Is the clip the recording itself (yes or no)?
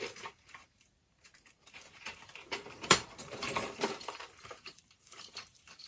no